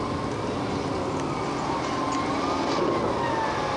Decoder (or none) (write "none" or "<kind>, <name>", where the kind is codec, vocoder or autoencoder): none